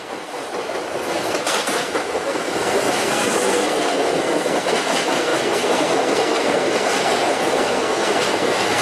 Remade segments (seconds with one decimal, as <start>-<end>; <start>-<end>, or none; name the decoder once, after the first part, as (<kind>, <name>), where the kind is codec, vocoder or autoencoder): 0.0-0.4 (codec, SNAC); 0.9-8.8

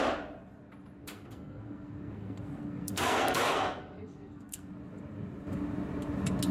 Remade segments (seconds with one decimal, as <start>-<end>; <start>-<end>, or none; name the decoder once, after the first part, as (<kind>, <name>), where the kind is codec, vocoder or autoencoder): 1.0-4.7 (codec, SNAC)

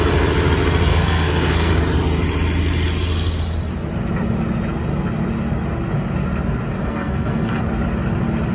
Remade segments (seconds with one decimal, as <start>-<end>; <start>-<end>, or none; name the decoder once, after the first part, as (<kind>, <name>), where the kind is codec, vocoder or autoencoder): 0.9-1.7 (codec, SNAC); 6.8-7.6